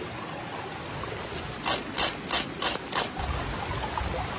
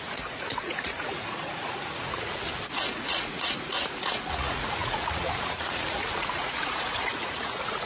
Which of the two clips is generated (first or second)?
second